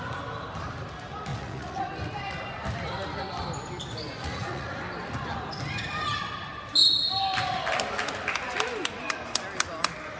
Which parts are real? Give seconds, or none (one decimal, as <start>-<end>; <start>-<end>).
0.0-1.3; 1.8-4.0; 4.8-10.2